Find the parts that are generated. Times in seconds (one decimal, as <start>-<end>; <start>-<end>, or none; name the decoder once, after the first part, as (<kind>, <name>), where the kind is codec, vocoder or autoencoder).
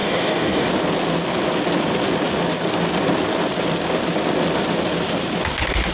0.0-0.7 (codec, DAC)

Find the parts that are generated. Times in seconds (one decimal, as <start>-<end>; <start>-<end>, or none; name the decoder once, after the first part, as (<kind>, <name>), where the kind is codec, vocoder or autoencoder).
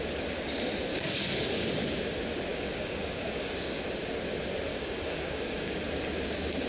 0.9-1.7 (codec, DAC); 2.5-3.8; 4.7-5.8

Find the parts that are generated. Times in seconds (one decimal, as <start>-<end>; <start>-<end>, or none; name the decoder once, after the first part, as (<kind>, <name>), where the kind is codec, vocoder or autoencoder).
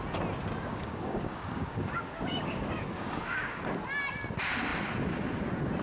0.7-3.6 (codec, DAC)